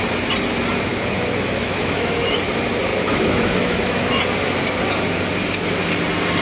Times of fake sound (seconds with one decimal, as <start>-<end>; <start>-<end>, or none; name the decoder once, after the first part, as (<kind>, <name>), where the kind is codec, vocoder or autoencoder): 0.9-2.4 (autoencoder, DAC-VAE); 2.9-4.2